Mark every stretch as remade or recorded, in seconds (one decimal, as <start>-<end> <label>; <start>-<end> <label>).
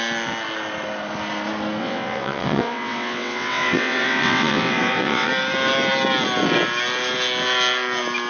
0.0-1.8 recorded; 1.8-5.3 remade; 5.3-8.3 recorded